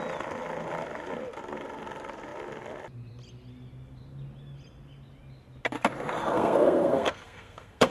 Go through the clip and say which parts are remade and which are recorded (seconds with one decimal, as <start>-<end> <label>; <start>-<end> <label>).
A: 0.0-6.2 recorded; 6.2-7.9 remade